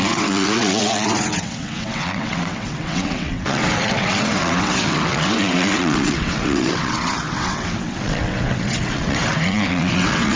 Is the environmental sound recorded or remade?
remade